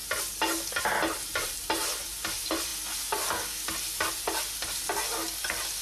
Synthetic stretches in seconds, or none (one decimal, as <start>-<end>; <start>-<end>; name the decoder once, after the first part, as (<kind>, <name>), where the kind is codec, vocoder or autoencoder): none